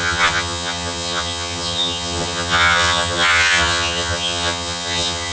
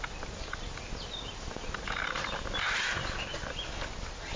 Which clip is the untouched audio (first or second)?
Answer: second